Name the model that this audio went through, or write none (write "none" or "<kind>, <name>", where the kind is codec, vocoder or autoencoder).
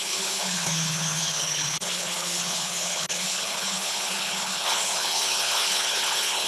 codec, HILCodec